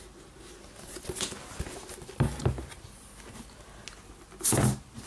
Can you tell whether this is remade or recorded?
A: recorded